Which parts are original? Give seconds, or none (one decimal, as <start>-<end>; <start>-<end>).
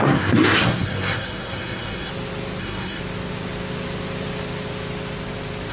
2.1-2.6; 3.0-5.7